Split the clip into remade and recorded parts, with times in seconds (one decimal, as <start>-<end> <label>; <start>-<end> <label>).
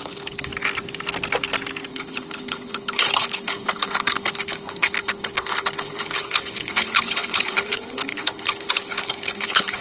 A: 0.0-0.5 remade; 0.5-1.9 recorded; 1.9-9.8 remade